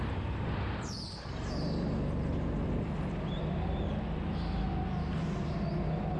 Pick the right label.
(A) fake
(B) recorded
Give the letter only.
B